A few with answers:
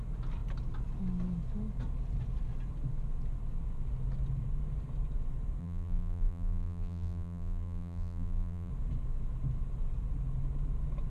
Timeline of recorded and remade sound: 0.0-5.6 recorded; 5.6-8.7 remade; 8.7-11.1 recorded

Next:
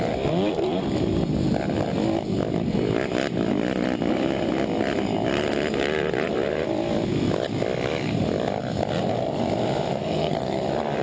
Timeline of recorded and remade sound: 0.0-9.9 recorded; 9.9-10.6 remade; 10.6-11.0 recorded

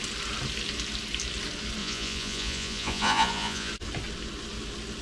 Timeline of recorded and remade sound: 0.0-1.8 recorded; 1.8-3.7 remade; 3.7-5.0 recorded